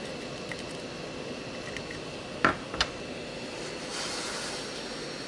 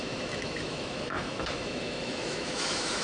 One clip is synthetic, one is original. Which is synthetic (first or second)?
second